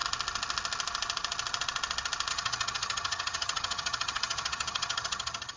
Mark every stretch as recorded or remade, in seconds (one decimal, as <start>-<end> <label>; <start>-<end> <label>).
0.0-2.3 recorded; 2.3-5.6 remade